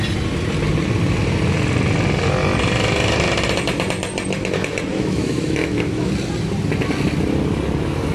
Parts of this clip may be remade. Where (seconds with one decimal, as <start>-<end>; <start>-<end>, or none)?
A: 4.9-6.1